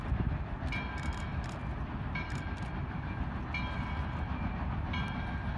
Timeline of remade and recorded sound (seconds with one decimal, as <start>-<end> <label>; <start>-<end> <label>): 0.0-5.6 recorded